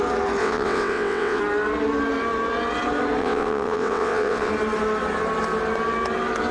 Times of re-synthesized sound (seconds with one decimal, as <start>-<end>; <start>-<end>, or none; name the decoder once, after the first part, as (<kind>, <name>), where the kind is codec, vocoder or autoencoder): 0.4-1.4 (vocoder, WaveNeXt); 3.2-4.5

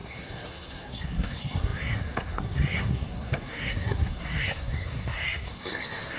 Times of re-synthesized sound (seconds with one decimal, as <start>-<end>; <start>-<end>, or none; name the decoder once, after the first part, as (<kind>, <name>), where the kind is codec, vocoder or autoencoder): 0.0-6.2 (codec, SNAC)

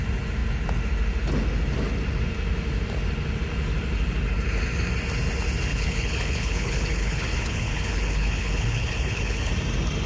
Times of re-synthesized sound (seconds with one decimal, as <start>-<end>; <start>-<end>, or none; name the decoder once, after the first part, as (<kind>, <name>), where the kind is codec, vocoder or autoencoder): 5.7-9.5 (codec, HILCodec)

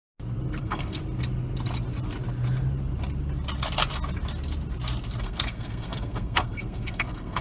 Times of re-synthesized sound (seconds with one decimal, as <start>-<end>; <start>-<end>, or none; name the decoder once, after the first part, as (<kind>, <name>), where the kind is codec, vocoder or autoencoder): 0.6-1.0 (codec, SNAC); 5.2-7.4

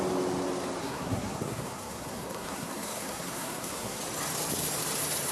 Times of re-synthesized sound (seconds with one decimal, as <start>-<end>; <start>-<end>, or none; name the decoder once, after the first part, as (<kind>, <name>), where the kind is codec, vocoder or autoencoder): 0.8-4.0 (codec, SNAC)

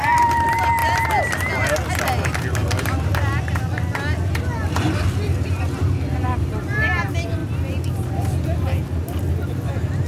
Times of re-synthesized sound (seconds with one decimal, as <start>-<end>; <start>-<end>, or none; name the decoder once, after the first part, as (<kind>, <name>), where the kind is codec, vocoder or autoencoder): none